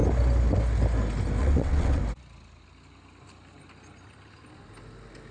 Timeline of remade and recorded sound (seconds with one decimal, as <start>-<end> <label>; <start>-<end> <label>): 0.0-1.4 recorded; 1.4-2.0 remade; 2.0-5.3 recorded